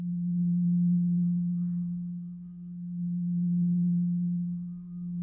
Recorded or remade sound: remade